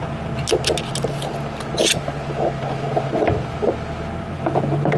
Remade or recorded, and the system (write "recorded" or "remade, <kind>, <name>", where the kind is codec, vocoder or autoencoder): recorded